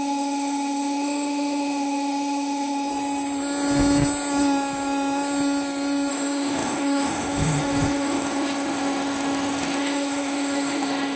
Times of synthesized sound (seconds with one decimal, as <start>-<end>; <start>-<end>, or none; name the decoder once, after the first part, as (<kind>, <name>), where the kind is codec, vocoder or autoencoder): 0.0-2.9 (autoencoder, DAC-VAE); 6.1-11.2